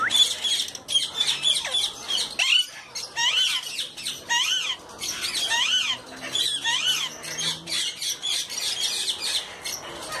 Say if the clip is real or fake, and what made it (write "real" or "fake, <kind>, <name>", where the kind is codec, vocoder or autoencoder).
real